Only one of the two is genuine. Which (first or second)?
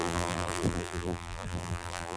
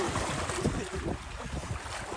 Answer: second